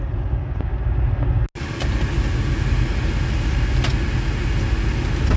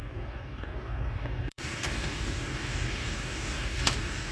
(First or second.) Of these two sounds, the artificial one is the second